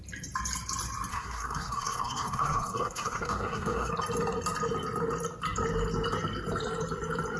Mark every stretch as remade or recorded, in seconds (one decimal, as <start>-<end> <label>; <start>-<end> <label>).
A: 0.0-1.1 recorded; 1.1-3.9 remade; 3.9-7.4 recorded